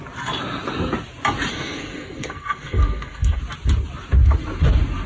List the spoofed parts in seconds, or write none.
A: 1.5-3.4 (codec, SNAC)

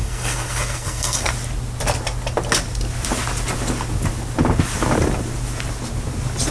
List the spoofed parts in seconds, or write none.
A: 0.0-1.3 (codec, SNAC)